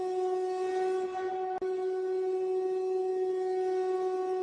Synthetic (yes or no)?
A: no